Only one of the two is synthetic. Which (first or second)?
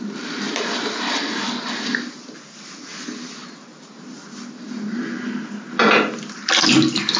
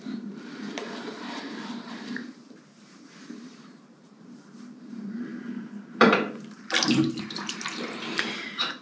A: second